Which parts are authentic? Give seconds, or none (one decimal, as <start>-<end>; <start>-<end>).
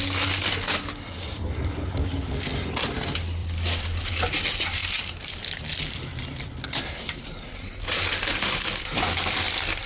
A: 0.0-2.5; 3.0-3.4; 4.1-4.8; 7.2-9.9